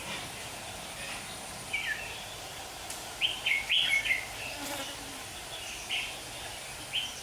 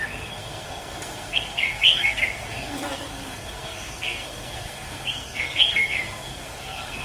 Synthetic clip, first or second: second